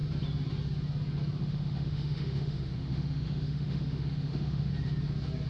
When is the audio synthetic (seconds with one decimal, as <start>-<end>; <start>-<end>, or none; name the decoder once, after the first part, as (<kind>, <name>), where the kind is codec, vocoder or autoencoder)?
1.4-4.7 (autoencoder, DAC-VAE)